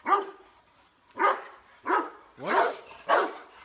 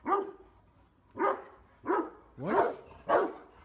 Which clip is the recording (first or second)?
second